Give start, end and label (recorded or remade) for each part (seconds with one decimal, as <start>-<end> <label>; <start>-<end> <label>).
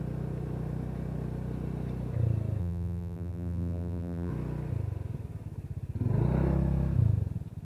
0.0-2.6 recorded; 2.6-4.3 remade; 4.3-7.6 recorded